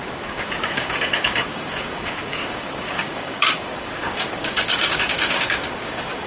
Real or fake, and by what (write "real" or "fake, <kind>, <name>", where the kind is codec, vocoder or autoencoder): fake, codec, DAC